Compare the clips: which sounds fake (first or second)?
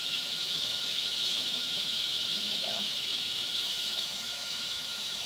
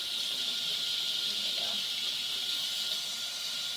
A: first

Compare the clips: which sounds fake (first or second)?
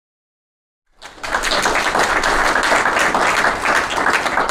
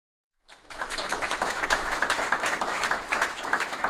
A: second